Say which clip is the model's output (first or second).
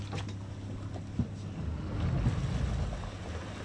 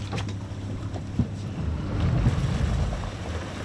second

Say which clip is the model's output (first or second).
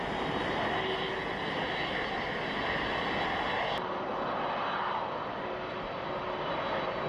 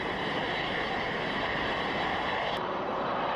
second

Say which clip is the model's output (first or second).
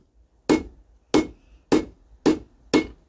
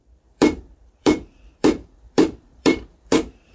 second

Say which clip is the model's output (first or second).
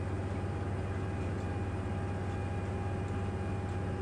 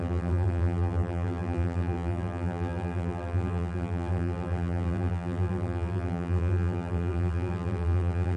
second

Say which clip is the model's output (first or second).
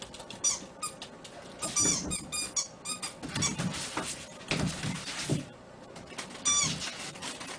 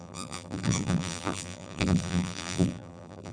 second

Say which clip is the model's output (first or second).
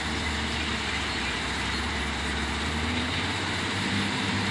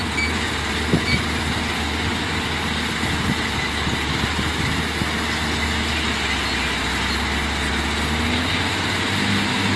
first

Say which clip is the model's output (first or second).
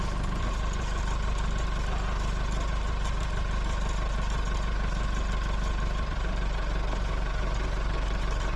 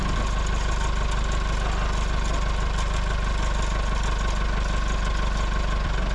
first